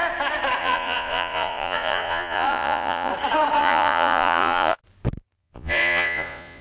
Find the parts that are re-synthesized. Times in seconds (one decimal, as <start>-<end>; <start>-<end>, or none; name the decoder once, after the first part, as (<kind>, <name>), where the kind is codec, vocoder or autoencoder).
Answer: 0.6-3.1 (vocoder, Vocos); 3.6-4.8; 5.4-6.6